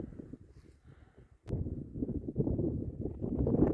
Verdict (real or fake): fake